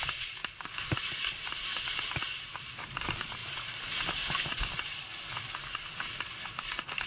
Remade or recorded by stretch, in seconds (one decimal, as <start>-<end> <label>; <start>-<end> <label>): 0.0-7.1 recorded